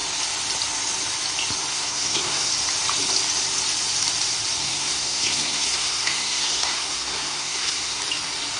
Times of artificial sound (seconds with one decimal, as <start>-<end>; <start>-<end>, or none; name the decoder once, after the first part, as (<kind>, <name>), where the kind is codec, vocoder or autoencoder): 1.7-2.5 (codec, SNAC); 4.6-8.0